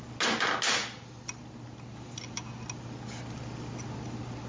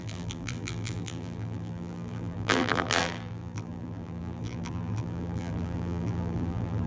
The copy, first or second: second